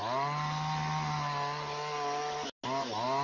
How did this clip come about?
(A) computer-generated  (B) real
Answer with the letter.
B